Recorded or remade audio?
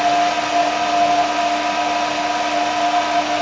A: recorded